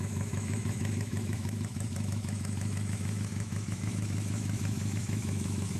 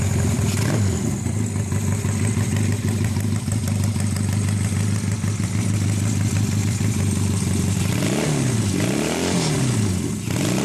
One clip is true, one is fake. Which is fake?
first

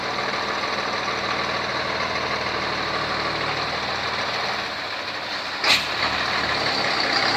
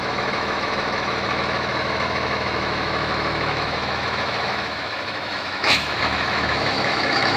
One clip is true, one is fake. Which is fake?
second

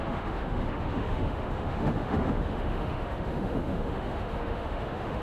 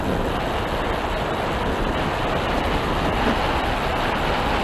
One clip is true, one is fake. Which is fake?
first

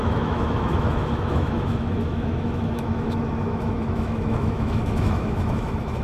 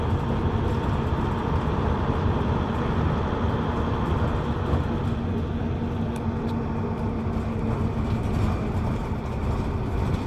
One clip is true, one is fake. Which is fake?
first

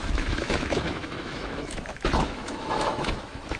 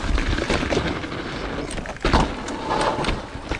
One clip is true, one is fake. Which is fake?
first